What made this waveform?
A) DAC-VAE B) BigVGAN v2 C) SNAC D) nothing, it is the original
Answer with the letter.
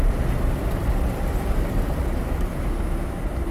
D